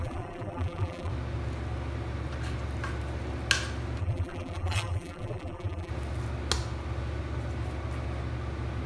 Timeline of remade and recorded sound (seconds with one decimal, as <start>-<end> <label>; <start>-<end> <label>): 0.0-1.1 remade; 1.1-4.0 recorded; 4.0-5.9 remade; 5.9-8.9 recorded